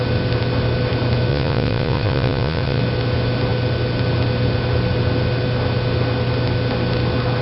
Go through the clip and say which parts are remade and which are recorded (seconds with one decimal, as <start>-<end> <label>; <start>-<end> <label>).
0.0-1.3 recorded; 1.3-2.8 remade; 2.8-7.4 recorded